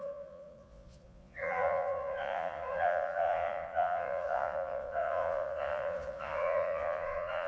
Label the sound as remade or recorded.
remade